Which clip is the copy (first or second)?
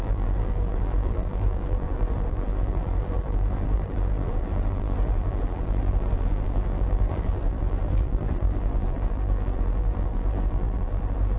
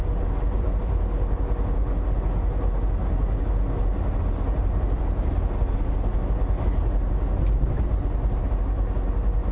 first